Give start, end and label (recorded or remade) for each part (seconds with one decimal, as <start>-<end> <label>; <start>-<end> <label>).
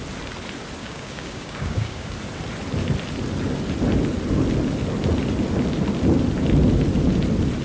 0.0-0.8 recorded; 0.8-2.1 remade; 2.1-7.6 recorded